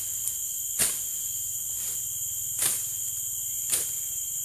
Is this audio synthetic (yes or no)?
no